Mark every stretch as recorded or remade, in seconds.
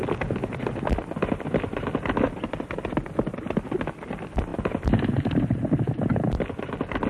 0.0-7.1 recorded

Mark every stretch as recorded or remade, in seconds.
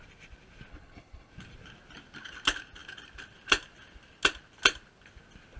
0.0-0.7 recorded; 0.7-1.3 remade; 1.3-5.6 recorded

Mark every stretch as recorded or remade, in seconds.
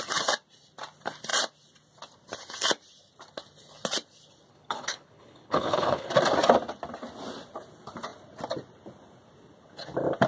0.0-4.5 recorded; 4.5-6.1 remade; 6.1-10.3 recorded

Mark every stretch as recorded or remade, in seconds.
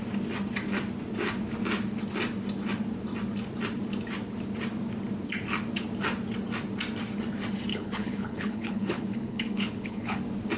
0.0-7.7 recorded; 7.7-10.2 remade; 10.2-10.6 recorded